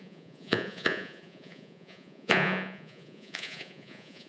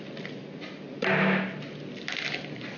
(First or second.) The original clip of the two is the second